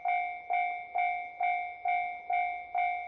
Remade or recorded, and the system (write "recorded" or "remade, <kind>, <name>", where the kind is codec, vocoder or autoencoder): recorded